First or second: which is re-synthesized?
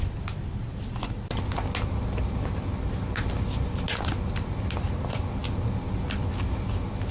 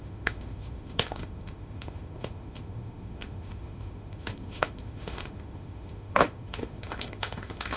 second